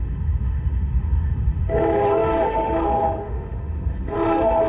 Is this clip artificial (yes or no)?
yes